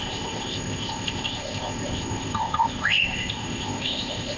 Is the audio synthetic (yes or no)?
yes